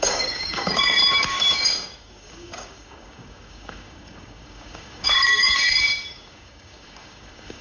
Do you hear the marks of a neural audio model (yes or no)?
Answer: yes